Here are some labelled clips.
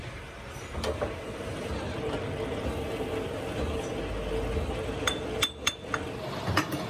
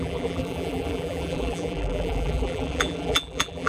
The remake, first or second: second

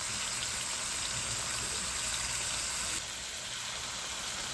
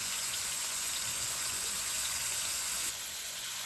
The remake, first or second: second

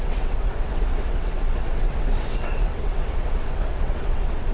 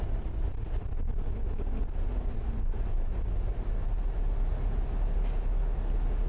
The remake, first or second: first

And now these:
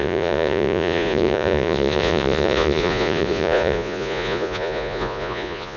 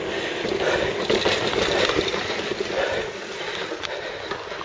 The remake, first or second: first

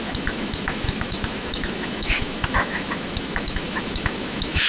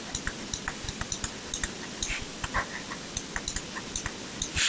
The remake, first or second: first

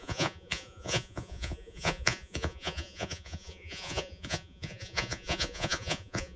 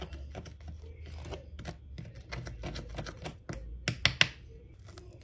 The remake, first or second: first